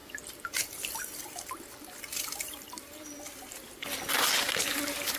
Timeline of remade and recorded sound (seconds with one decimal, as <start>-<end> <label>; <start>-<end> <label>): 0.0-5.2 recorded